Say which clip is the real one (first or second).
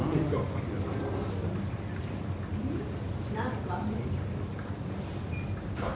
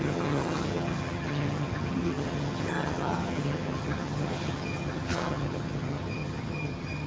first